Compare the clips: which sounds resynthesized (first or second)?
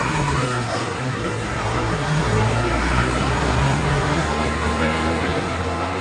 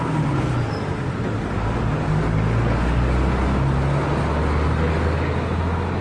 first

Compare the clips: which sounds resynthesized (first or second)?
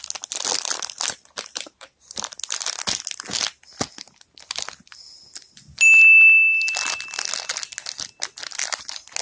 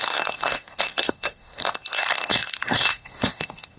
second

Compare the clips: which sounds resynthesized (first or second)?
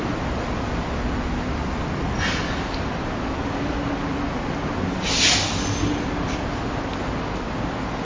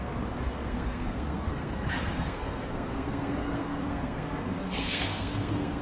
second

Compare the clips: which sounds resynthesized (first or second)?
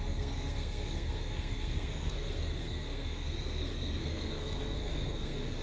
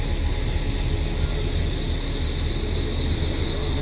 first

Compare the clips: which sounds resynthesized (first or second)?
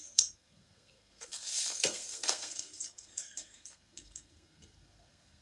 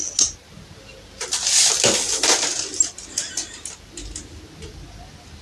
first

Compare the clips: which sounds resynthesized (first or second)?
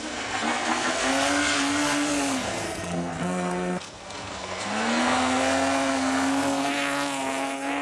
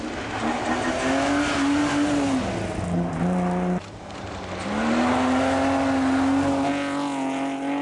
first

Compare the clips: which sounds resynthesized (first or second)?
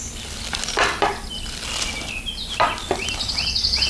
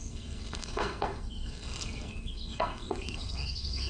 second